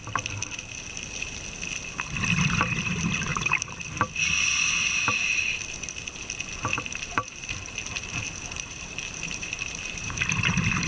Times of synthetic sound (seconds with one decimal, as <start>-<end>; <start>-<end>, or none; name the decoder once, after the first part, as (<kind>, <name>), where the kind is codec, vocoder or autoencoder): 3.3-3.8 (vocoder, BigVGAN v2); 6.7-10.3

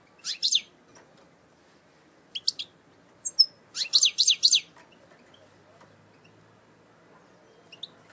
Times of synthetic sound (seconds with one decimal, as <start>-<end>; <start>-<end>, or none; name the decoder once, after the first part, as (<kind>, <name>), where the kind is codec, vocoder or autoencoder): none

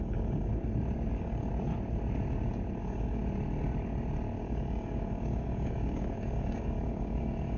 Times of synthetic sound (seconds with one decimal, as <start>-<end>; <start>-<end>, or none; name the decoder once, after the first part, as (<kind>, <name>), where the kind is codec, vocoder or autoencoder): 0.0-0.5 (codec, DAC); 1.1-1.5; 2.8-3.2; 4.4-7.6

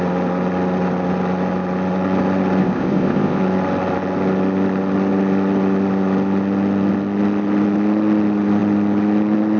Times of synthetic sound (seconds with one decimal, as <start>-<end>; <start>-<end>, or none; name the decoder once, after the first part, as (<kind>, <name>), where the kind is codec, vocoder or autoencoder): 2.6-3.4 (codec, ZipCodec)

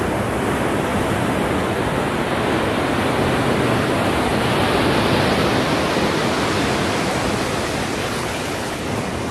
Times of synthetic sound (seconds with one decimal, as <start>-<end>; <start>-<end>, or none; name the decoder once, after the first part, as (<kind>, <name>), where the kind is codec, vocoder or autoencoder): 8.0-8.8 (codec, HILCodec)